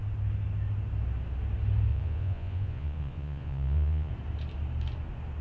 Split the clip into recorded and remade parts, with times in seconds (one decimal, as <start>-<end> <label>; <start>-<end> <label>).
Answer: 0.0-1.9 recorded; 1.9-4.1 remade; 4.1-5.4 recorded